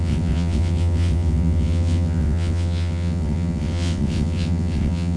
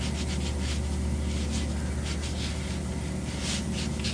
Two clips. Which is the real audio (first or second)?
second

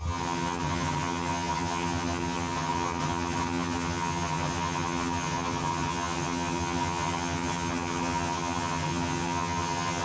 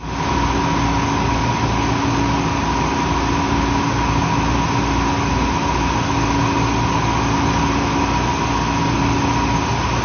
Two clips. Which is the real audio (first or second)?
second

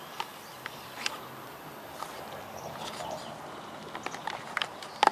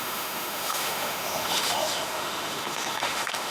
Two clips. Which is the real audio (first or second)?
first